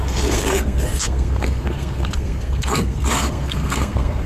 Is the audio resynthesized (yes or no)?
yes